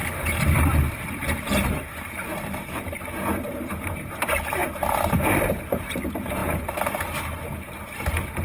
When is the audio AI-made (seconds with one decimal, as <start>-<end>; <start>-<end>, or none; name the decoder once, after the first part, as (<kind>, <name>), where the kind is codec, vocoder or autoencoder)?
0.6-8.4 (vocoder, BigVGAN v2)